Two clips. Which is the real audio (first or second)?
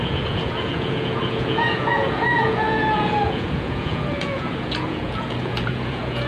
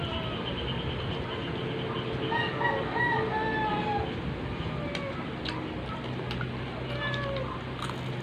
second